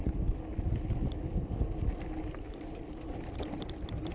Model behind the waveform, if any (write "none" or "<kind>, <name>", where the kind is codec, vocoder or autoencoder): none